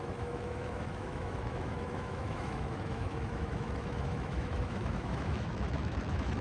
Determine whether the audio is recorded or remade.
remade